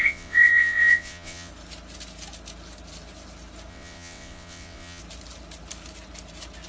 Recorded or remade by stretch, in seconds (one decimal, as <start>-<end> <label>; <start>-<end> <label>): 0.0-1.5 remade; 1.5-3.7 recorded; 3.7-5.0 remade; 5.0-6.7 recorded